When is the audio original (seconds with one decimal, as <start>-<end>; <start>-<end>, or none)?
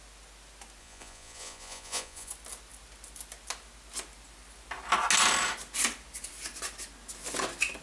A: 0.0-0.8; 2.3-7.8